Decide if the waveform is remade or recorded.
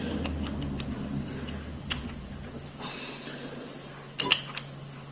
recorded